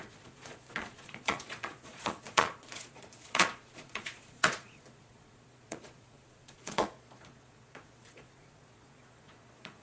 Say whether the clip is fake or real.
fake